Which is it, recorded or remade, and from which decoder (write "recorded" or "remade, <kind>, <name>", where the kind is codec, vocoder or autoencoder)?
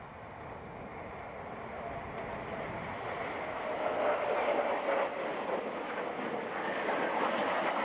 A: recorded